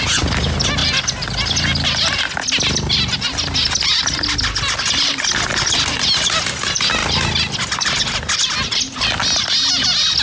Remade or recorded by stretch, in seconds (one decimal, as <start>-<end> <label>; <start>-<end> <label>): 0.0-10.2 recorded